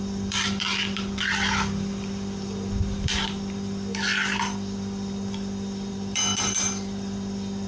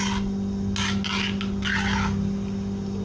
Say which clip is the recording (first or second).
second